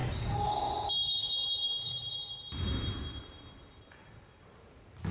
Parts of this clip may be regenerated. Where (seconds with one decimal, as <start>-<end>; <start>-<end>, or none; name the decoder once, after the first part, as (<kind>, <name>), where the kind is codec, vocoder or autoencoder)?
none